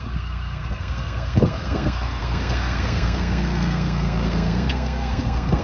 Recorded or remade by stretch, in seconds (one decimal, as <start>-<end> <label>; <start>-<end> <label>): 0.0-5.6 remade